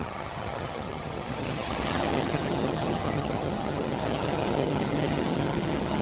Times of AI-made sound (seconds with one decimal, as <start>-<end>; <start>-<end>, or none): 0.0-6.0